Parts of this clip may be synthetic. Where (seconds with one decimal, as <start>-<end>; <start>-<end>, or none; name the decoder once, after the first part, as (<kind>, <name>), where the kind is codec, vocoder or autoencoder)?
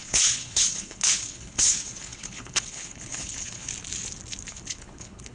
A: 0.0-3.7 (codec, HILCodec); 4.5-5.3